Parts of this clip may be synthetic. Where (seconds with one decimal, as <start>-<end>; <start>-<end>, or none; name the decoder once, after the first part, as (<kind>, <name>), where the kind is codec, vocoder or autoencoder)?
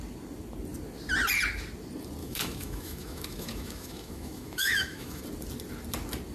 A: 2.2-5.2 (autoencoder, DAC-VAE)